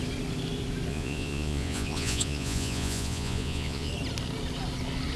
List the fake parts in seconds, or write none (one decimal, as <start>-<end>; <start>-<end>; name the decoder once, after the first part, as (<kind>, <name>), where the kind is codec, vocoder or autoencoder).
0.9-3.9 (vocoder, Vocos)